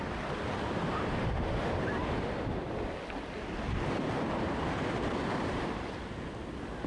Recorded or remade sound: recorded